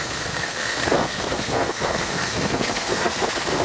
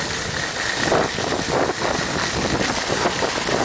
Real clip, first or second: second